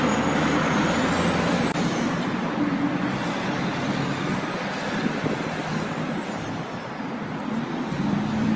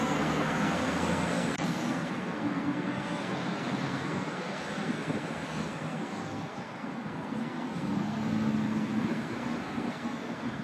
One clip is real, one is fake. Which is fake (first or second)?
second